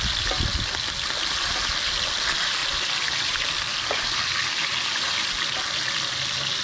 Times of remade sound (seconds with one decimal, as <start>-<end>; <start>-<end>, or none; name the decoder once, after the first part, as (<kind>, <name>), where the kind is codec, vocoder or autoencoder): none